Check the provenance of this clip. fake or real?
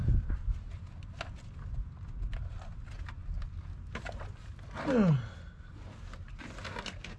real